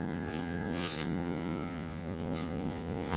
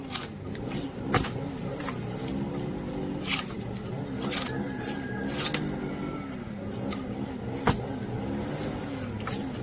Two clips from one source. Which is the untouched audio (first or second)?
second